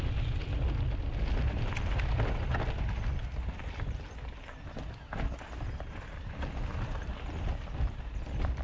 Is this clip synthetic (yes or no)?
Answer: no